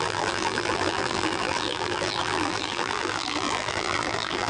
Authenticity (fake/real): fake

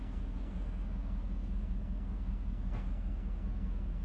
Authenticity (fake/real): fake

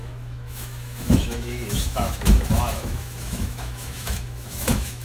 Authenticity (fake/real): fake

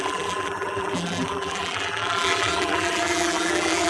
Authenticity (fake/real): fake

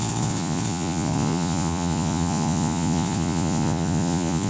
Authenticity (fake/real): fake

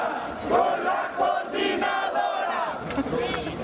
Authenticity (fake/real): real